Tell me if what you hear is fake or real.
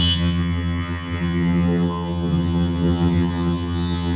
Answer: fake